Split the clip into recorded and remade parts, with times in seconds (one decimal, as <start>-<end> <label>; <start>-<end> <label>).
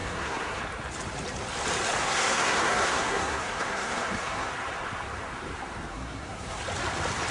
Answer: 0.0-0.6 remade; 0.6-2.0 recorded; 2.0-4.5 remade; 4.5-5.9 recorded; 5.9-6.6 remade; 6.6-7.3 recorded